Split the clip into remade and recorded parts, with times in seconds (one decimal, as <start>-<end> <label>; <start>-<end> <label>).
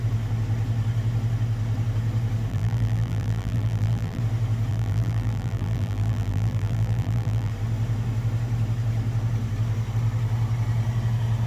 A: 0.0-2.5 recorded; 2.5-4.2 remade; 4.2-4.7 recorded; 4.7-7.5 remade; 7.5-11.5 recorded